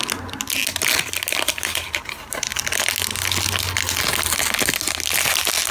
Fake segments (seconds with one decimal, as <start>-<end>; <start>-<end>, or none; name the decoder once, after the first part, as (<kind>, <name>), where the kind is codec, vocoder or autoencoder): none